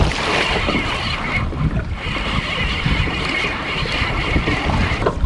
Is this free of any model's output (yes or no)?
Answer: no